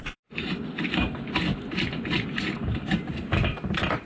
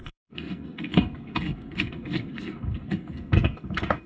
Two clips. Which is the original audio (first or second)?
first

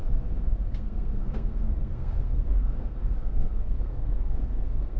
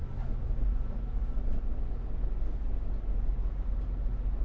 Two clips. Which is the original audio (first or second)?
second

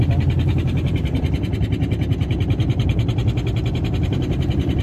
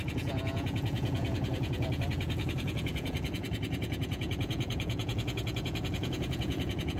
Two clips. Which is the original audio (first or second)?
first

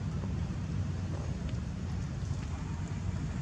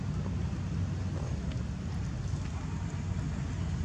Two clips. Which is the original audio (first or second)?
second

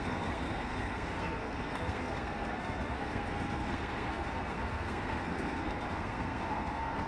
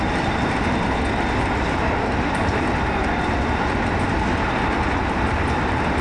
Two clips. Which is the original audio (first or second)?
second